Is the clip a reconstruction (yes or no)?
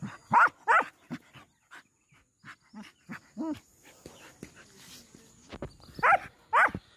no